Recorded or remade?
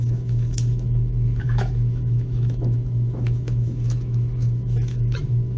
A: remade